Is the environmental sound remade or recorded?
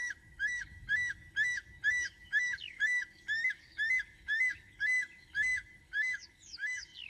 remade